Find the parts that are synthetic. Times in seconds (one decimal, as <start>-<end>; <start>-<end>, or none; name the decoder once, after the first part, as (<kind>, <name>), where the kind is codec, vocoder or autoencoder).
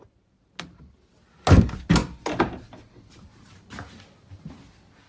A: none